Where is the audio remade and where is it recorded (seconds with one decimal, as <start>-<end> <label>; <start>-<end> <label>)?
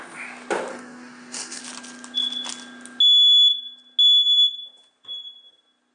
0.0-0.7 recorded; 0.7-1.6 remade; 1.6-5.9 recorded